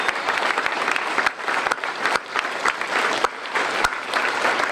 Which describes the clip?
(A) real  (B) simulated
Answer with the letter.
B